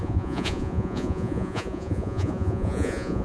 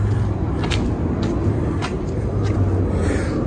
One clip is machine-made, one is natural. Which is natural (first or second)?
second